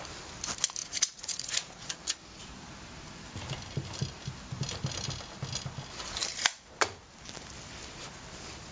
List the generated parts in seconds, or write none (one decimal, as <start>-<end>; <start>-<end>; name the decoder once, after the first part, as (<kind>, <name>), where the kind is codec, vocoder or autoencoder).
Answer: 0.8-1.9 (vocoder, Vocos)